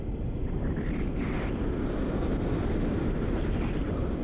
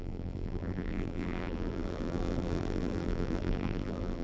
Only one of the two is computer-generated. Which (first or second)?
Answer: second